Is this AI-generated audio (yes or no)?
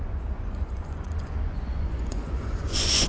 yes